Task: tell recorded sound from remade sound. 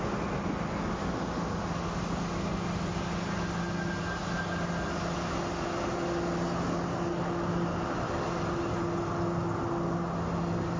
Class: recorded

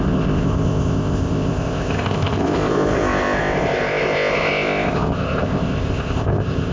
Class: remade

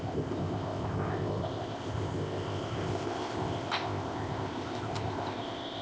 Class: remade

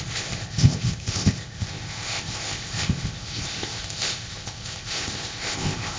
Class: remade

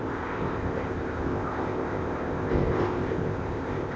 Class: remade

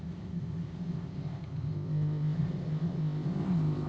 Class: remade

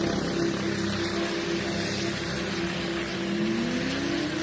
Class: recorded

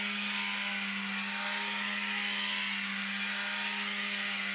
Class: recorded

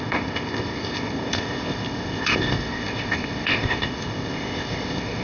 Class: remade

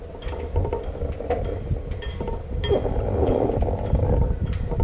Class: recorded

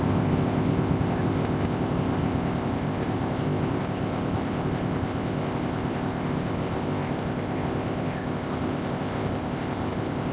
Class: remade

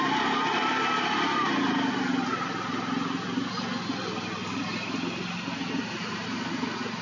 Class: recorded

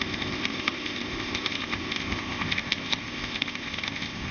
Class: remade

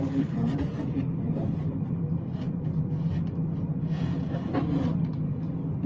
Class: recorded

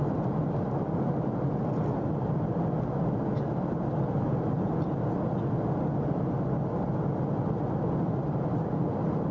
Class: recorded